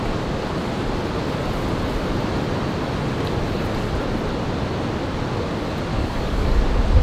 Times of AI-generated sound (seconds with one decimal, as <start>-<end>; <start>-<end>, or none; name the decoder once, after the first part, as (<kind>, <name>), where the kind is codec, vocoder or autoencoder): 5.9-6.6 (codec, DAC)